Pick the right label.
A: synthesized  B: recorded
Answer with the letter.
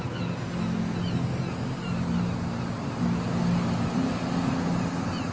B